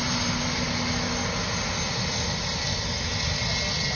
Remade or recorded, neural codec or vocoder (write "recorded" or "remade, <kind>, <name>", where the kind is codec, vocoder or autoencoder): recorded